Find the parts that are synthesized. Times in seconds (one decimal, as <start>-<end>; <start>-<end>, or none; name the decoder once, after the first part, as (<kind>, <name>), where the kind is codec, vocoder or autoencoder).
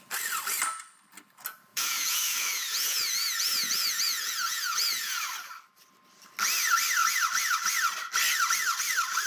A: 1.7-5.2 (vocoder, Vocos)